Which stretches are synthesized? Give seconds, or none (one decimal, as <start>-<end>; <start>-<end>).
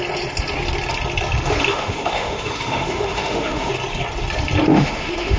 1.7-3.7; 4.7-5.4